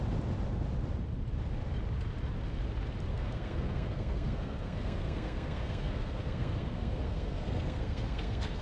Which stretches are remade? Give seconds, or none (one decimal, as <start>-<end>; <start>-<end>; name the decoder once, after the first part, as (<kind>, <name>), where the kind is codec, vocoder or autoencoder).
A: 3.1-8.6 (codec, SNAC)